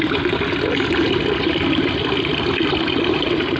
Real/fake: real